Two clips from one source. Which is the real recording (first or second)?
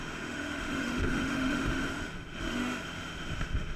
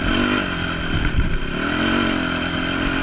second